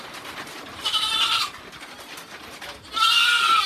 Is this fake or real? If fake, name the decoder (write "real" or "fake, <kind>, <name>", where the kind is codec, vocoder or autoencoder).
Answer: real